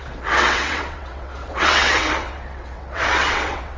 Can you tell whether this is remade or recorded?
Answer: remade